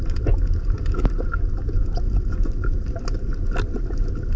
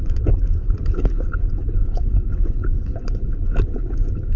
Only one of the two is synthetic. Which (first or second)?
second